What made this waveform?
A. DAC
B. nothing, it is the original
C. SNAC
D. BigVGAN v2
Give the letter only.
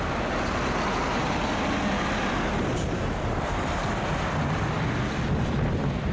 D